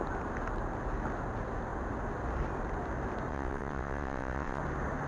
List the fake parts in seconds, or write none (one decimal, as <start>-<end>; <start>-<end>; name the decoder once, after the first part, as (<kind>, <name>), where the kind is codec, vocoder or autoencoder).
3.3-4.6 (vocoder, WaveNeXt)